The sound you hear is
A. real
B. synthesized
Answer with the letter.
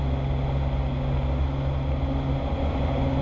A